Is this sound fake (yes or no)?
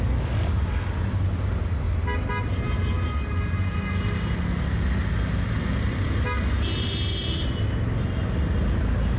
no